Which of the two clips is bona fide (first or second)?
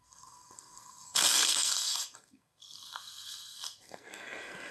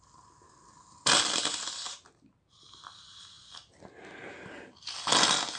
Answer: second